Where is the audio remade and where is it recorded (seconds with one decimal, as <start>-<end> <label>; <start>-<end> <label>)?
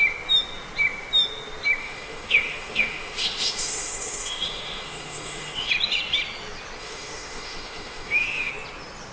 0.0-1.8 recorded; 1.8-5.7 remade; 5.7-6.8 recorded; 6.8-8.5 remade; 8.5-9.1 recorded